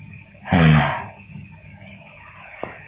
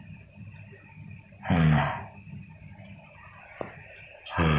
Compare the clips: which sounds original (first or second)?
second